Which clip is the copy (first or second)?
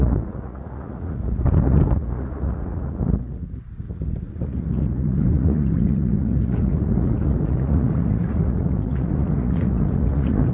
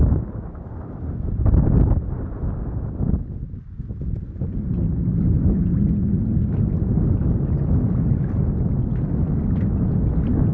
first